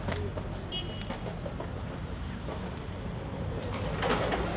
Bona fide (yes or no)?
yes